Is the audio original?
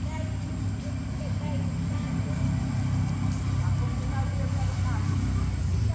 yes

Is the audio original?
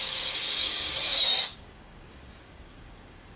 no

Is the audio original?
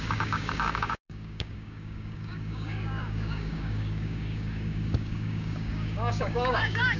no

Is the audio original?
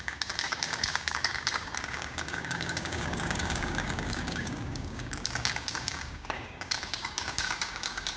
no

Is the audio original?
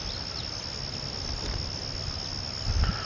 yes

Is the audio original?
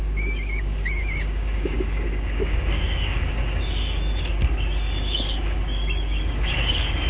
no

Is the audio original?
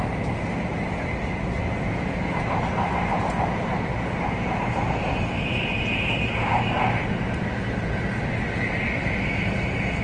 yes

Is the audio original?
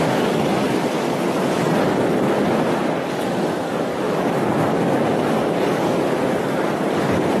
no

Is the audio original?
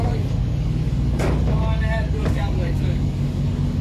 no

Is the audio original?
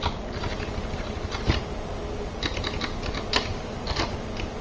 yes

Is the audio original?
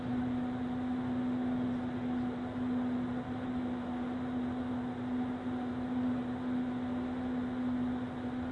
yes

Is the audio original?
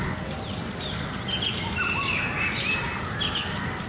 yes